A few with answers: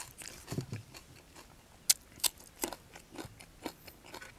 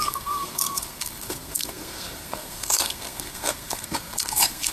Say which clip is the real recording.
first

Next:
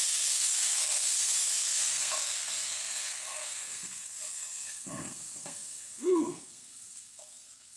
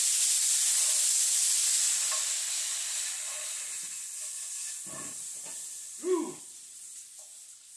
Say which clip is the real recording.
second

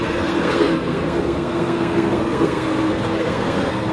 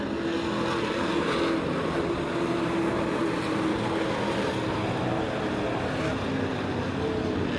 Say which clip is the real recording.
second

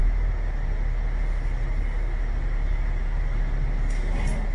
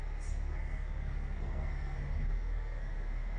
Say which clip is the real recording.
first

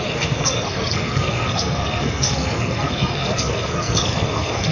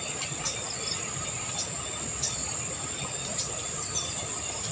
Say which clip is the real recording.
second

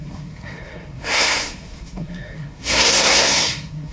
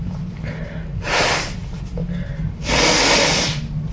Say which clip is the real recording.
second